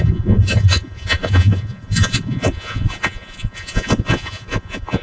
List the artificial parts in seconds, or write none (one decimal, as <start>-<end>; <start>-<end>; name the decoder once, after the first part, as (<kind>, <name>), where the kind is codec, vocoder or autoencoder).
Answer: 0.0-5.0 (vocoder, Vocos)